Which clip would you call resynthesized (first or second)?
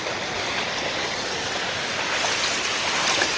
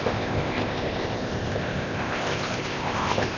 second